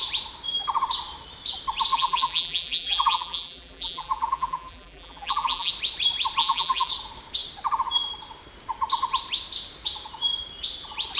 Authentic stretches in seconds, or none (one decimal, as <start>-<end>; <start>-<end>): 0.0-1.9; 5.7-6.4; 6.9-11.2